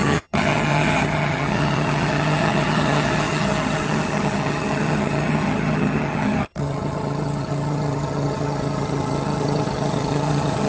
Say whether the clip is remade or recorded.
remade